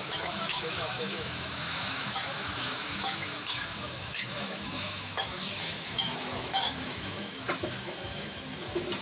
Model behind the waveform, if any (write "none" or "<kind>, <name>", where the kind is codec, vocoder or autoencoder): autoencoder, DAC-VAE